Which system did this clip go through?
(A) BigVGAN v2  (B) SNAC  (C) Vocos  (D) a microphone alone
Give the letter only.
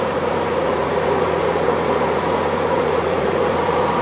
C